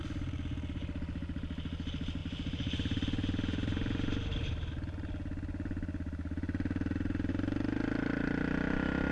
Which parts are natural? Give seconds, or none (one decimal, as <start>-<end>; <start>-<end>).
0.0-9.1